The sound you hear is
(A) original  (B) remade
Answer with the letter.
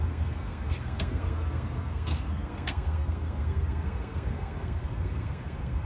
B